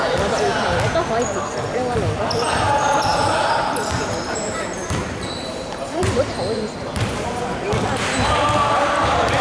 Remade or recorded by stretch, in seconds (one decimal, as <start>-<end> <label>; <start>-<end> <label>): 0.0-3.1 recorded; 3.1-6.2 remade; 6.2-9.4 recorded